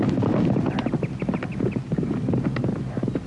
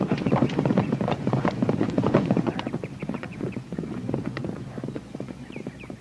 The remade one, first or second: second